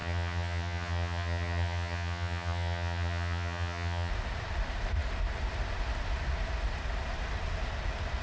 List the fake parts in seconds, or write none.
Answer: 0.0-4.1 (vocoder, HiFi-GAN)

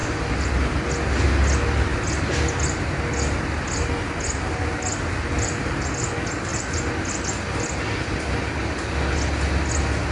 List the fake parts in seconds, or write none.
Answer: none